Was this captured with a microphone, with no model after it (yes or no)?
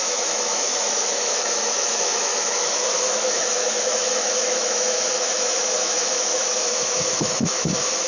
no